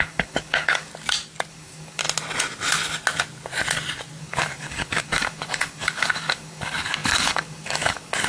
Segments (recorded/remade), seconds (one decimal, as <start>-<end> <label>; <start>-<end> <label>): 0.0-0.9 remade; 0.9-1.5 recorded; 1.5-2.0 remade; 2.0-4.2 recorded; 4.2-8.3 remade